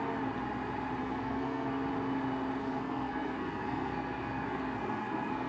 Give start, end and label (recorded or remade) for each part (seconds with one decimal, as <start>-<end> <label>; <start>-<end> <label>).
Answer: 0.0-1.0 recorded; 1.0-1.9 remade; 1.9-2.6 recorded; 2.6-5.5 remade